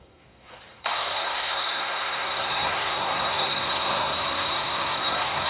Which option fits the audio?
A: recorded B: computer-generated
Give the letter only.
B